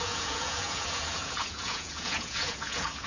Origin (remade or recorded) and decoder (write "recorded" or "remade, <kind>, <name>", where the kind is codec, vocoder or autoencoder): remade, vocoder, Vocos